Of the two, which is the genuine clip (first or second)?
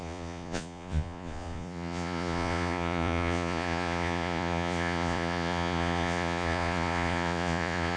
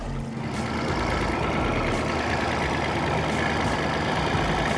second